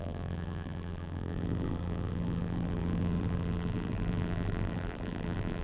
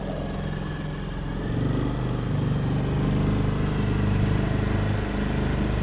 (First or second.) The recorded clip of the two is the second